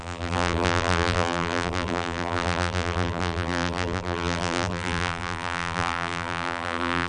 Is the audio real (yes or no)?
no